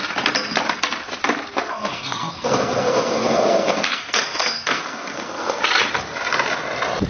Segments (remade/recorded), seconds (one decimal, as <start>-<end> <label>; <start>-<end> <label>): 0.0-1.7 recorded; 1.7-5.6 remade; 5.6-7.1 recorded